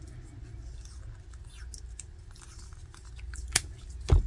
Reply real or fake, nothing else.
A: real